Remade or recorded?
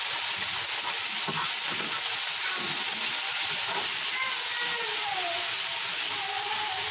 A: recorded